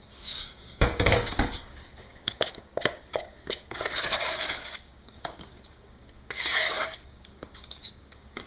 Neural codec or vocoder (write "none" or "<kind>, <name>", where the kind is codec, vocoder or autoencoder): codec, DAC